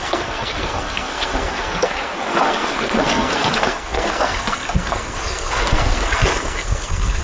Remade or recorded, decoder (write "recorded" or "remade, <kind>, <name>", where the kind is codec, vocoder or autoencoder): remade, codec, SNAC